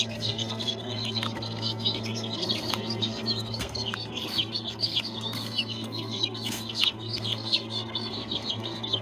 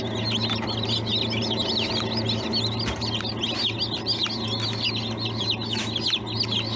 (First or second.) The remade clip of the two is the first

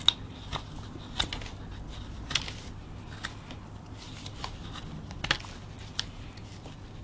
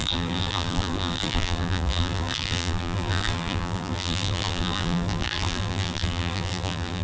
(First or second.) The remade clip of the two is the second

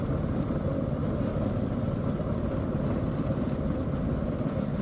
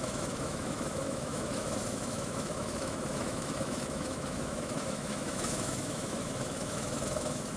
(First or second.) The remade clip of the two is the second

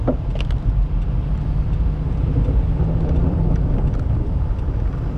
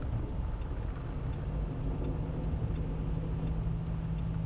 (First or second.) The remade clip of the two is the first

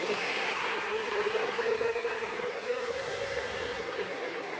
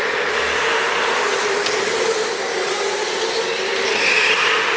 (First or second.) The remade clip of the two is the first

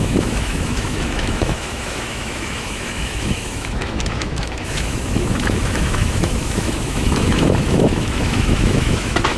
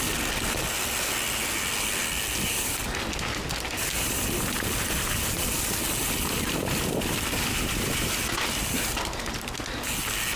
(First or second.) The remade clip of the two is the first